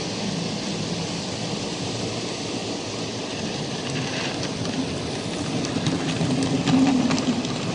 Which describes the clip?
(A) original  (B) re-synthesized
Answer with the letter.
A